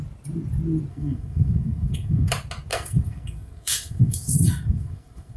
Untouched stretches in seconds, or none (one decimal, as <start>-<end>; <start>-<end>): 0.0-0.9; 2.3-2.7